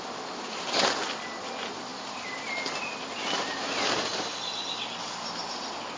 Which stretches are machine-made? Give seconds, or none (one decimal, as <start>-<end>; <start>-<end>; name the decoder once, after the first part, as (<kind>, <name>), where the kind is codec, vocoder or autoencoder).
none

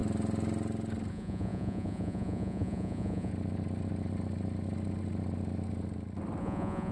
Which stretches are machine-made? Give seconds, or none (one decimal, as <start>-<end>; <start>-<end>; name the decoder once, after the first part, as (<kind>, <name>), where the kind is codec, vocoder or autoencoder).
1.1-3.3 (vocoder, Vocos); 6.4-6.9